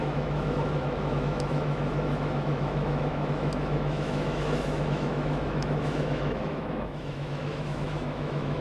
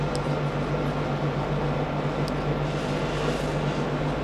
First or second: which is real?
second